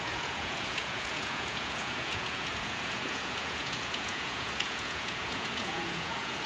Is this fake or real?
fake